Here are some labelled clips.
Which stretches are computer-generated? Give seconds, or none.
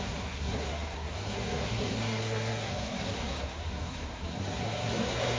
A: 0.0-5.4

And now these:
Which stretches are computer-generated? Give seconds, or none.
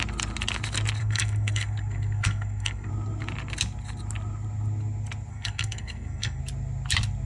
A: 1.0-2.9; 5.3-6.4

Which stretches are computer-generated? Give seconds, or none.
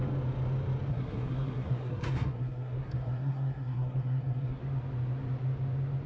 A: 0.9-4.6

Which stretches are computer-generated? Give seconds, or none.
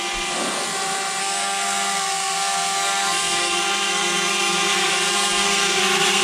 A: 1.2-4.9; 5.4-6.2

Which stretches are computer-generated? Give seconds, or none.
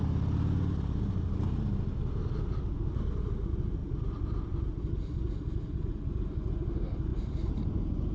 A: none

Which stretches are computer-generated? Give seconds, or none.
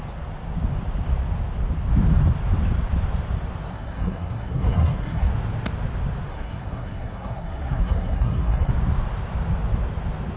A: 3.7-5.3; 6.3-8.7